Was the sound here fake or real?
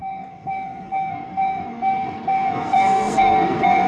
fake